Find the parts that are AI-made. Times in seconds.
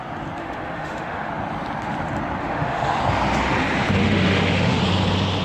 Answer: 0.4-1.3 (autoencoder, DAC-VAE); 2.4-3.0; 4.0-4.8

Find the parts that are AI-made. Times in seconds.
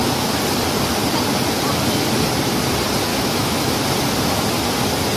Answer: 3.1-3.7 (autoencoder, DAC-VAE)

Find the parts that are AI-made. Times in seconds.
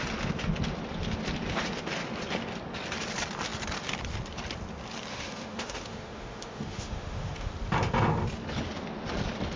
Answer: 5.1-7.5 (autoencoder, DAC-VAE)